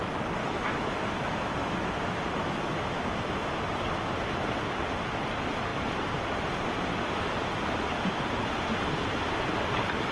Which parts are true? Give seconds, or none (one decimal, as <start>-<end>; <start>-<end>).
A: 0.0-0.4; 3.6-10.1